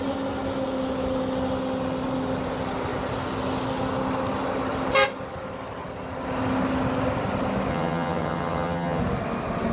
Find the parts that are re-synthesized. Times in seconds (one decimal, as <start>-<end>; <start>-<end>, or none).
7.7-9.0